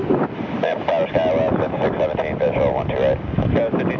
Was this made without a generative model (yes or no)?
yes